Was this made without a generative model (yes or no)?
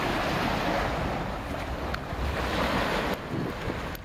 yes